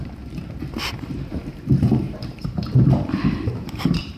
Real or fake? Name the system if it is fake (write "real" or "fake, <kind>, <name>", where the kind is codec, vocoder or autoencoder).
fake, vocoder, BigVGAN v2